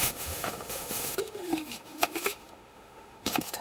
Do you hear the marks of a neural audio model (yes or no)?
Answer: yes